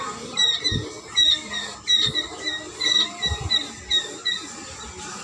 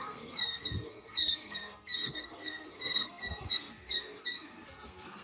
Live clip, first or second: first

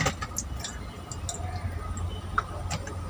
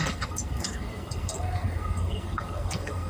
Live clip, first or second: first